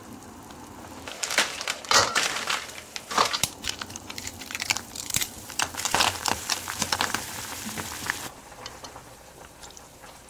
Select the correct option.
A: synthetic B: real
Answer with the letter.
A